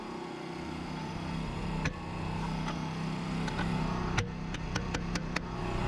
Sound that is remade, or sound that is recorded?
recorded